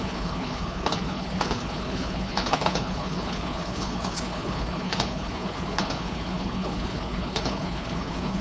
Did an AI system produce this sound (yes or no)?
yes